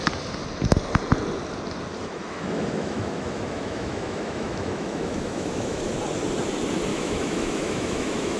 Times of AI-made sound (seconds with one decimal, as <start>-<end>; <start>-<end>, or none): 2.0-5.8; 6.9-8.4